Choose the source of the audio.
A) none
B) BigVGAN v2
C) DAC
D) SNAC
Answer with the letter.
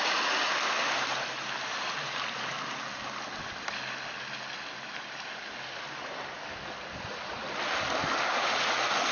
A